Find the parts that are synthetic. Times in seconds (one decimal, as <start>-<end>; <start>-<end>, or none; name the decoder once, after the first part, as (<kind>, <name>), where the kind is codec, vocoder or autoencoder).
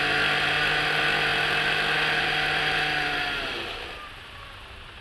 none